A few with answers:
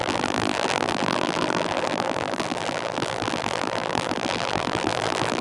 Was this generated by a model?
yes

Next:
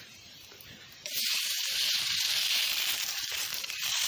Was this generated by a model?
yes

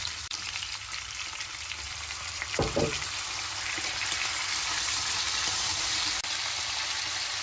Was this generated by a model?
yes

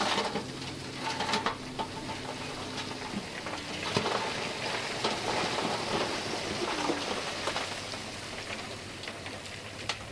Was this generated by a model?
no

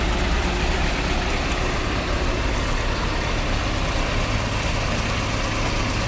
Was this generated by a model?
no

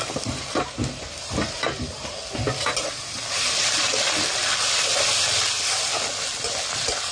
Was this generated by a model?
yes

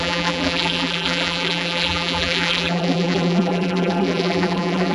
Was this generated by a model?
yes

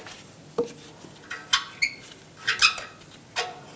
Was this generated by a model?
no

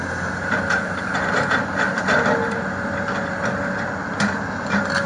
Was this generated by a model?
yes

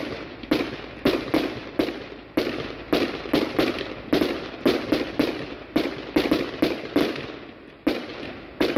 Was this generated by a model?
no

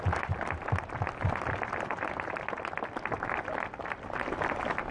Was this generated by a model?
no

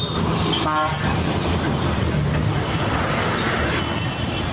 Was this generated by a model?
no